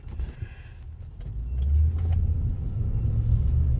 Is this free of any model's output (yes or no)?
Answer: yes